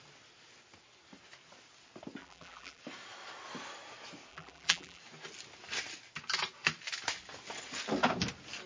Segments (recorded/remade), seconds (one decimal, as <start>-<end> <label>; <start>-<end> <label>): 0.0-2.2 recorded; 2.2-2.8 remade; 2.8-4.3 recorded; 4.3-5.0 remade; 5.0-8.7 recorded